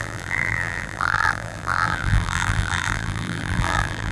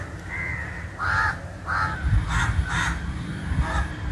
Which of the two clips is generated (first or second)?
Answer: first